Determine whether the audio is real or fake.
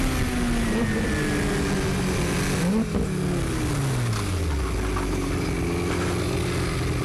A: real